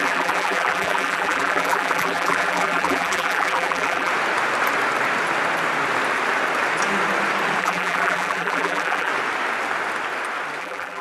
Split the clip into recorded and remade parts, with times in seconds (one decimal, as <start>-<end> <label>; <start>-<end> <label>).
0.0-4.1 remade; 4.1-7.6 recorded; 7.6-9.1 remade; 9.1-10.6 recorded; 10.6-11.0 remade